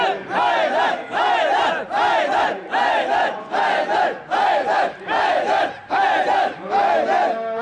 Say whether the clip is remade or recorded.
recorded